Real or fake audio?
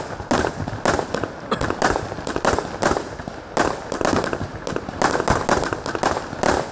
real